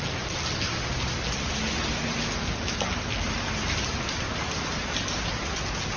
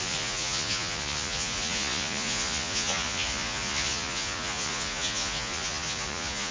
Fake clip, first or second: second